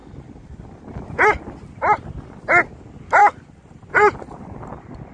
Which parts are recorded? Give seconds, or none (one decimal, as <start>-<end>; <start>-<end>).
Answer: 0.0-5.1